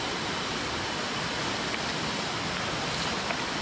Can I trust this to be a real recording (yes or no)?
yes